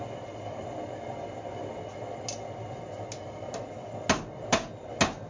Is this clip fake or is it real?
real